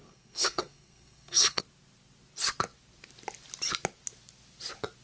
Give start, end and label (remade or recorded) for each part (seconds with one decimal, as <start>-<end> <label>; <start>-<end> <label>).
0.0-1.6 remade; 1.6-5.0 recorded